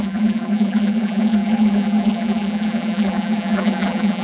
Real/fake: fake